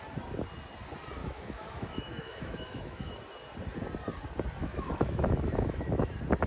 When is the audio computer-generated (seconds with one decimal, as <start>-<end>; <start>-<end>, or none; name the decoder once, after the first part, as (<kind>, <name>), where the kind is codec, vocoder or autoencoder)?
1.2-3.2 (autoencoder, DAC-VAE); 4.6-6.1